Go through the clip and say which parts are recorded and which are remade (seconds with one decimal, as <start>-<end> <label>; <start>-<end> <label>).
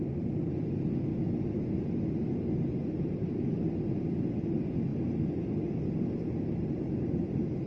0.0-7.7 recorded